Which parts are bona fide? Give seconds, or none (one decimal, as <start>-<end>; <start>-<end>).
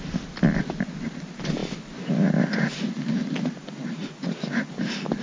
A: 0.0-5.2